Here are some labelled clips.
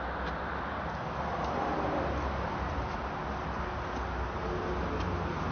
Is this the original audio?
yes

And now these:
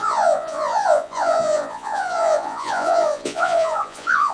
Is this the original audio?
no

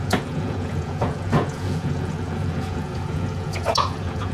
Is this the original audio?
no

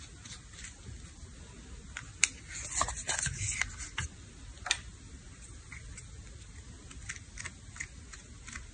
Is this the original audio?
yes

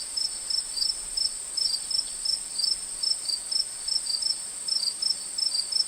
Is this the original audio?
yes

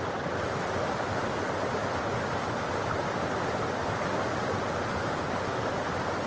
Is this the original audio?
yes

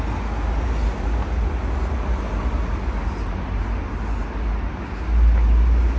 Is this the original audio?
yes